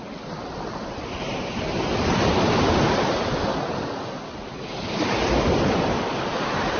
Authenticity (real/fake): real